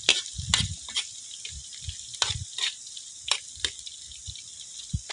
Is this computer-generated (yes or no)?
no